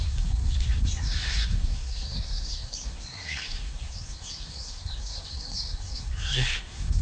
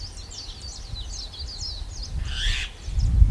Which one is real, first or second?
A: second